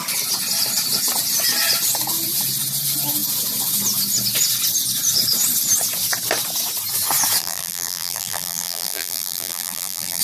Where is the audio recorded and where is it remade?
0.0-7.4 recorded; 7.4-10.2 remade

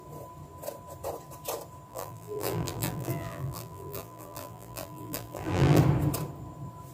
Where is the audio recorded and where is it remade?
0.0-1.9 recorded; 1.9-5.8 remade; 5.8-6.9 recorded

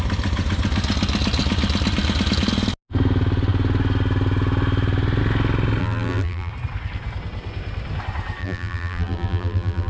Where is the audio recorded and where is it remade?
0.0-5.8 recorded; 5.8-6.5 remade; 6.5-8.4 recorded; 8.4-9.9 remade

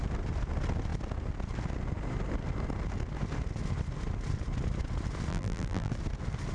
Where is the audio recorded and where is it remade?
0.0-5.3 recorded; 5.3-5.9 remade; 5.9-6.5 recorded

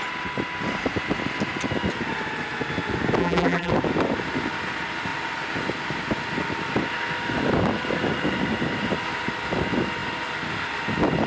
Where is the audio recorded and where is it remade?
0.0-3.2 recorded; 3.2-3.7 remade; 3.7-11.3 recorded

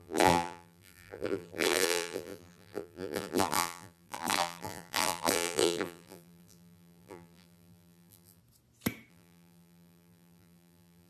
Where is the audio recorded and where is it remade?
0.0-8.4 remade; 8.4-9.1 recorded; 9.1-11.1 remade

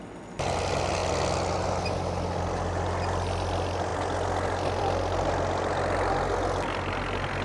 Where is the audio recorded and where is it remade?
0.0-7.4 recorded

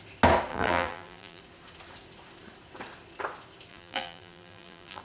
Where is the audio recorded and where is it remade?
0.0-0.5 recorded; 0.5-1.4 remade; 1.4-3.7 recorded; 3.7-5.0 remade